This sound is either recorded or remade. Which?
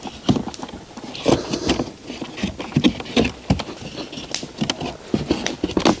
recorded